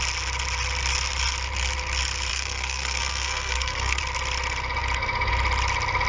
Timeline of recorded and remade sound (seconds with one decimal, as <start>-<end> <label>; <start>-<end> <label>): 0.0-2.3 recorded; 2.3-4.0 remade; 4.0-6.1 recorded